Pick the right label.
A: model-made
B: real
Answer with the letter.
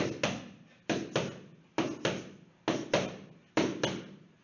B